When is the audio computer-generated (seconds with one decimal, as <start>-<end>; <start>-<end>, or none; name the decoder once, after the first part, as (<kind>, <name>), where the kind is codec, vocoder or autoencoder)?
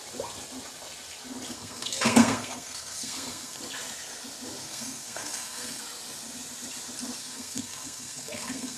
1.5-3.6 (codec, SNAC); 4.6-5.8; 7.2-8.8